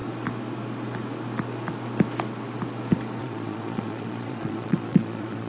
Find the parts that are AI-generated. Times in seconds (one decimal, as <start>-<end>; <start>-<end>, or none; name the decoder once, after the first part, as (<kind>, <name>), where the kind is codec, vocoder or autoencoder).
3.2-5.5 (vocoder, Vocos)